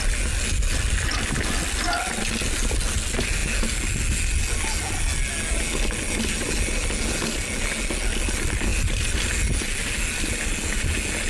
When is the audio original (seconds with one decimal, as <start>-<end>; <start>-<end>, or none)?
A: 0.0-11.3